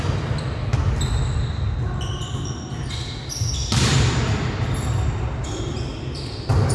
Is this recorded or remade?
recorded